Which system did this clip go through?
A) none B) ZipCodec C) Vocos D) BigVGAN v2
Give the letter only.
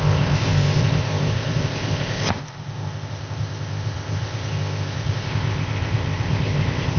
B